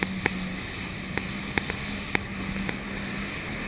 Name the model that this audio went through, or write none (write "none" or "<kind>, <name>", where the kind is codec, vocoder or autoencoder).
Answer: none